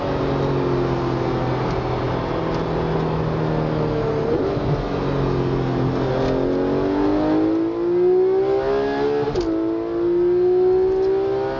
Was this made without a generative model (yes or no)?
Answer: yes